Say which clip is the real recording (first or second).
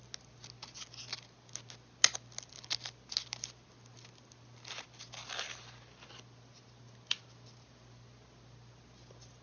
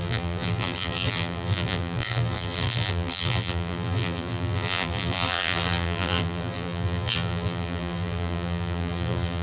first